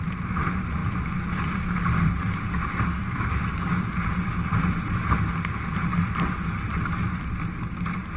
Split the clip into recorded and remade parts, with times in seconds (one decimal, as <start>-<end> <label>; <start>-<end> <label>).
0.0-2.9 recorded; 2.9-3.9 remade; 3.9-8.2 recorded